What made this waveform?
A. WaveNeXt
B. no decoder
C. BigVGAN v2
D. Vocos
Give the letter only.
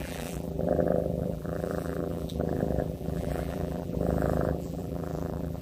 C